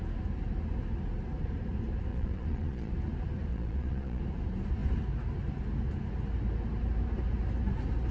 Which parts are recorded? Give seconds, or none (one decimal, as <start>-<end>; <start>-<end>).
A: 0.0-2.1; 2.9-3.5; 4.2-8.1